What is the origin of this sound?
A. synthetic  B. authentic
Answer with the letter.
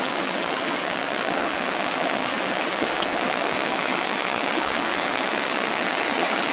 A